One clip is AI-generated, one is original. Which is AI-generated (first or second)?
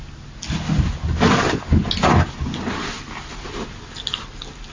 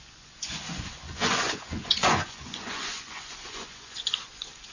second